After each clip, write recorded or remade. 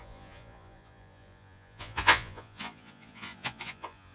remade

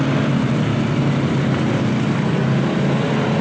recorded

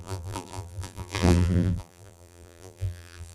remade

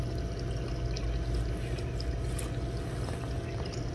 recorded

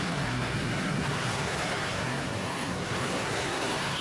remade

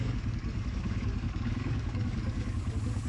remade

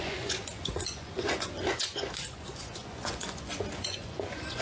remade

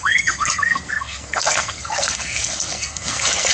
remade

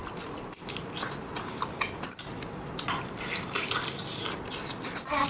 recorded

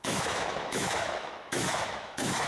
remade